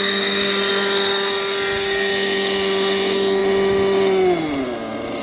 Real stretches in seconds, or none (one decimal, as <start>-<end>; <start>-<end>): 0.0-5.2